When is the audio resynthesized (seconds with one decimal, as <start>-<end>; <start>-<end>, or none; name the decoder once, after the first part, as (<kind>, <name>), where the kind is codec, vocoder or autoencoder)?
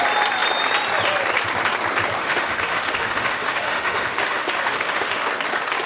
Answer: 2.2-5.3 (autoencoder, DAC-VAE)